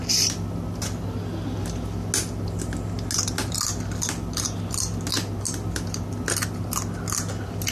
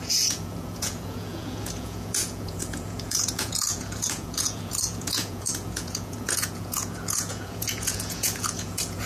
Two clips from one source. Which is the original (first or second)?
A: first